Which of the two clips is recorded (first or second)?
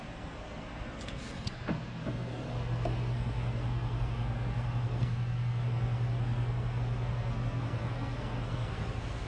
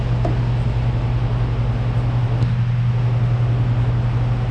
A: second